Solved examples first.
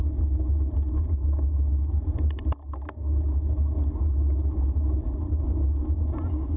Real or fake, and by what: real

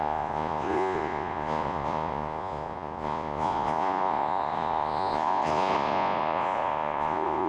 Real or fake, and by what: fake, vocoder, Vocos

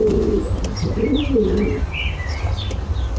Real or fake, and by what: real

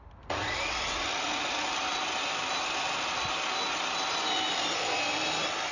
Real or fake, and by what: real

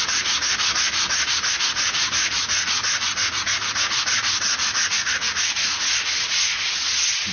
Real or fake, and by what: fake, vocoder, Vocos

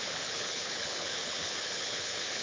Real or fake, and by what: fake, codec, HILCodec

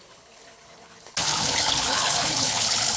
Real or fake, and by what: fake, codec, HILCodec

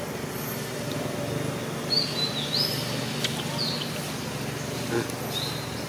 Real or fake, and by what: real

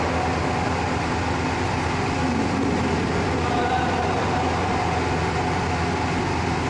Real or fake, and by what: real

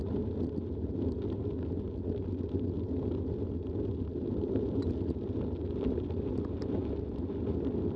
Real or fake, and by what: real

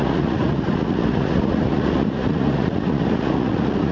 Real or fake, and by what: fake, vocoder, Vocos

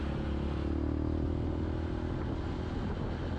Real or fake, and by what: real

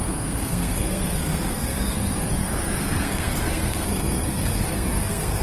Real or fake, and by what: fake, codec, SNAC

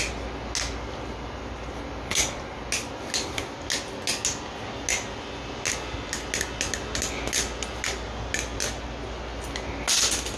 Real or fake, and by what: real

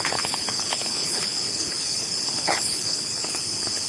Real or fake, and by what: fake, codec, HILCodec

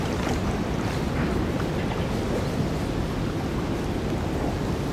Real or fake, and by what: real